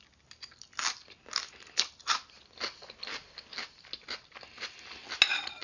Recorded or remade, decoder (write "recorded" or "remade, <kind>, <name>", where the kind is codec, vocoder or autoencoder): recorded